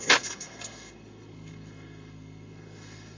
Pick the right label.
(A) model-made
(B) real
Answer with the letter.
A